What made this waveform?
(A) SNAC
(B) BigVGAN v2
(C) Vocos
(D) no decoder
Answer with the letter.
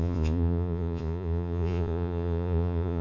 C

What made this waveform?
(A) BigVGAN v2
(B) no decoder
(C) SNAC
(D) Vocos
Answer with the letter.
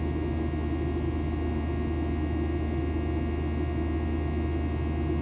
B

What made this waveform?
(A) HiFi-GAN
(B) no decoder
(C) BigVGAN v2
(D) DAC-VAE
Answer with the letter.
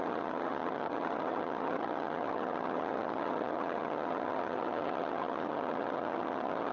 A